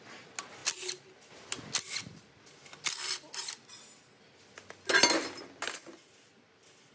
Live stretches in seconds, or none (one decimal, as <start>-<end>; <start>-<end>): 0.0-6.9